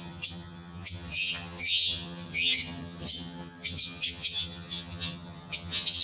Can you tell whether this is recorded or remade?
remade